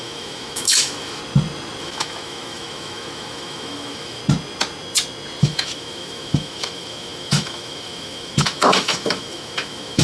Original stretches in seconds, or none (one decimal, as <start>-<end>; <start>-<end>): 1.2-1.8; 4.2-5.4